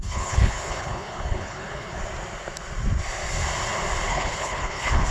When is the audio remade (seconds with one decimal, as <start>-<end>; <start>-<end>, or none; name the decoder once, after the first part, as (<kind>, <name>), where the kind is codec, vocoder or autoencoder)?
0.0-2.0 (codec, HILCodec); 4.1-5.1